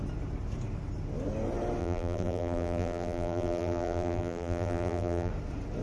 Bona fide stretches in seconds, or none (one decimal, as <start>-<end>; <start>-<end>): 0.0-1.8; 5.3-5.8